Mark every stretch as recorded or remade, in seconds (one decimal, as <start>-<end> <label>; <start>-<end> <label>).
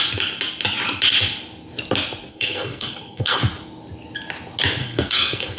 0.0-2.3 recorded; 2.3-3.4 remade; 3.4-4.8 recorded; 4.8-5.6 remade